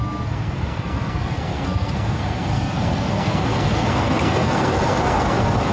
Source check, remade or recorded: remade